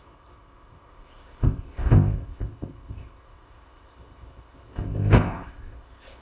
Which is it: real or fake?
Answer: fake